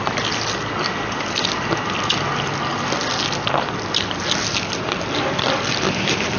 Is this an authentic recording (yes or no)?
yes